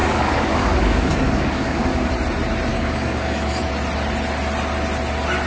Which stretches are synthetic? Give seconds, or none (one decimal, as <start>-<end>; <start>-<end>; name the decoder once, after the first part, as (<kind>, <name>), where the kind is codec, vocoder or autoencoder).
0.0-2.1 (codec, DAC); 2.7-3.7